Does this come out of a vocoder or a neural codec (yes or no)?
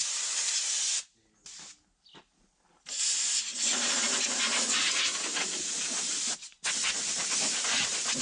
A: no